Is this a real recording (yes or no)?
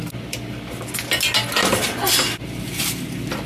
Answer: yes